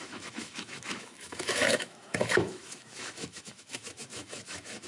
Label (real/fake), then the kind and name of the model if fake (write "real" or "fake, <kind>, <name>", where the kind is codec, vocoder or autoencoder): fake, autoencoder, DAC-VAE